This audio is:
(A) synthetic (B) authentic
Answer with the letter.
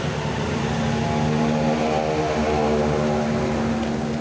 B